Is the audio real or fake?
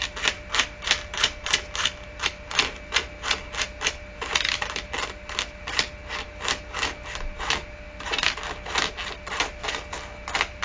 real